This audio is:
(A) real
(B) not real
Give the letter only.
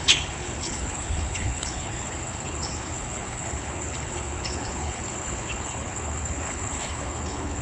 B